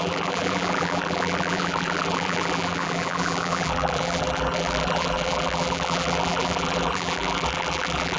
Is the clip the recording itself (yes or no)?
no